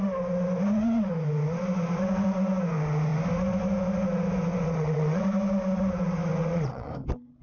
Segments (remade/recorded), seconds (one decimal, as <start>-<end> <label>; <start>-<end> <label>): 0.0-4.5 recorded; 4.5-5.2 remade; 5.2-6.4 recorded; 6.4-6.9 remade; 6.9-7.4 recorded